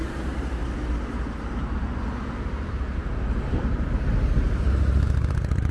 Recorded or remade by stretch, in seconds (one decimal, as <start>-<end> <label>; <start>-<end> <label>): 0.0-0.6 remade; 0.6-2.4 recorded; 2.4-3.0 remade; 3.0-5.3 recorded; 5.3-5.7 remade